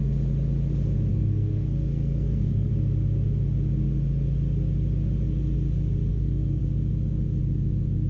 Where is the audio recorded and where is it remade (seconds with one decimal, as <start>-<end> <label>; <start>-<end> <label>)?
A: 0.0-1.1 recorded; 1.1-2.7 remade; 2.7-6.1 recorded; 6.1-6.6 remade; 6.6-8.1 recorded